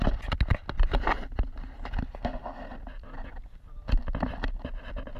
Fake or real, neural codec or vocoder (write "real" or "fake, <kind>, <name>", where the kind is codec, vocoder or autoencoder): real